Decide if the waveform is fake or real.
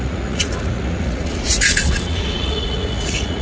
fake